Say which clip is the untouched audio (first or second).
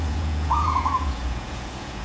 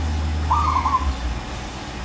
second